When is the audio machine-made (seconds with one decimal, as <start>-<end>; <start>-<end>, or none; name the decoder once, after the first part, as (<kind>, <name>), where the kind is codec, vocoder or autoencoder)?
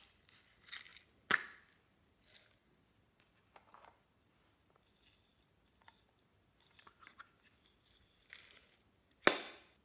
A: none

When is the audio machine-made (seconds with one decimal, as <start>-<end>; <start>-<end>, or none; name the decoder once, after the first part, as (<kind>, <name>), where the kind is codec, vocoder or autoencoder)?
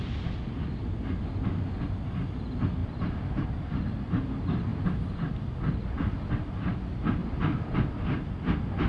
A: 2.8-4.1 (vocoder, BigVGAN v2); 4.7-6.1; 7.2-8.3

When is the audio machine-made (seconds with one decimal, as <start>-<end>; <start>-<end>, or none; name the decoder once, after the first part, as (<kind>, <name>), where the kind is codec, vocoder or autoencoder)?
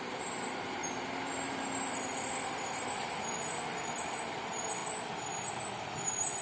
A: 0.0-4.8 (vocoder, BigVGAN v2); 5.5-6.4